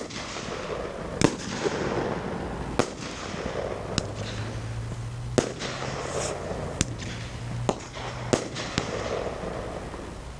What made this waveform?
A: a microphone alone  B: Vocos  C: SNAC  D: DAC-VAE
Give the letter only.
A